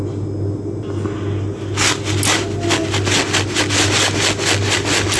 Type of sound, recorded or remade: recorded